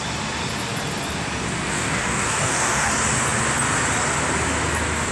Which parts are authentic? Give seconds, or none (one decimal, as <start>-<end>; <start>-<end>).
0.0-1.7; 2.9-5.1